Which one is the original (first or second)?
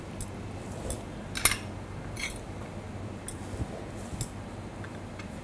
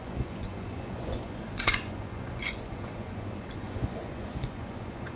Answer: first